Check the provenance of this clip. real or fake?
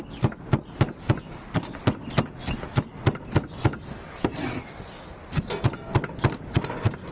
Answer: real